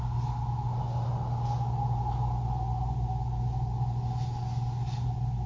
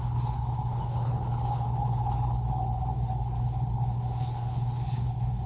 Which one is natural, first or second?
first